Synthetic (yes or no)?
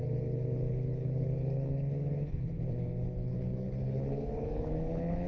yes